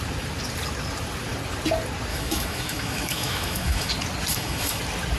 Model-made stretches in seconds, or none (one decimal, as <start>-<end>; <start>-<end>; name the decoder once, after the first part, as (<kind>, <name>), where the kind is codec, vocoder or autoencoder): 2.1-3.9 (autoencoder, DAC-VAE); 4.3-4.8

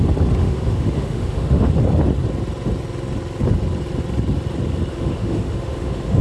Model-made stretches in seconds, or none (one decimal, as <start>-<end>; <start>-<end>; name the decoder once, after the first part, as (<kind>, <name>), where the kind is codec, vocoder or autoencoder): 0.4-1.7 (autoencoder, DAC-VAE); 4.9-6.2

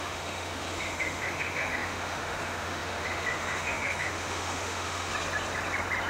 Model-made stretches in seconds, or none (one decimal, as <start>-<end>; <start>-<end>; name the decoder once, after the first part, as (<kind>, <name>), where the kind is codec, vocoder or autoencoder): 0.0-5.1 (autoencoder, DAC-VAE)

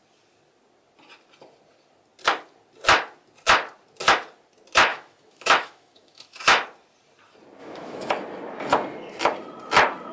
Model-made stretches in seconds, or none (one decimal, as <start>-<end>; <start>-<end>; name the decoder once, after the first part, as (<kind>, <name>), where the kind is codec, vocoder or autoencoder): 4.9-6.4 (autoencoder, DAC-VAE); 7.6-8.1

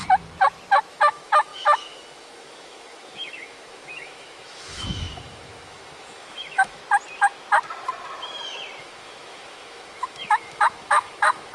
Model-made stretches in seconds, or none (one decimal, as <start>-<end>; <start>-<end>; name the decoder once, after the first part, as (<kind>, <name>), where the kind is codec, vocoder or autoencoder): 0.9-6.8 (autoencoder, DAC-VAE); 8.8-11.5